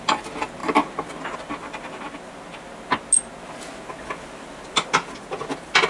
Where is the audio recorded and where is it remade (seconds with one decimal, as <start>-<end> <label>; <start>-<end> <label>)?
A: 0.0-5.9 recorded